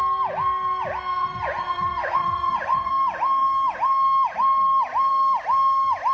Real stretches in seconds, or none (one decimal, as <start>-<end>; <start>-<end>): 0.0-1.2; 2.9-6.1